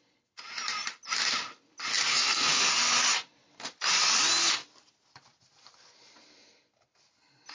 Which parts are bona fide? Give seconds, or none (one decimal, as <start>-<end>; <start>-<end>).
0.0-2.1; 2.7-7.5

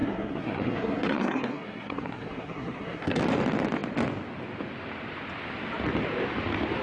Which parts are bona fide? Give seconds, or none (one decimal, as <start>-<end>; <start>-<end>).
3.2-6.8

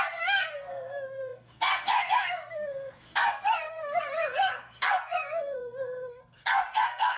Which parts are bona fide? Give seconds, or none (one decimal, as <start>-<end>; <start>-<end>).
none

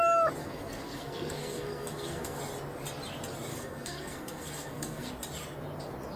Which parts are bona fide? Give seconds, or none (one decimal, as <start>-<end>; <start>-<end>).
0.0-0.4; 2.4-3.5; 5.1-6.2

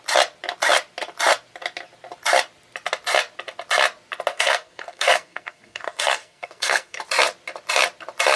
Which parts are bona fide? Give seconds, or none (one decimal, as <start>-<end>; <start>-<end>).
0.0-4.3; 7.0-8.4

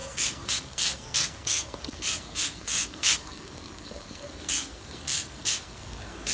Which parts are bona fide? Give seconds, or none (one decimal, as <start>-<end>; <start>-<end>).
none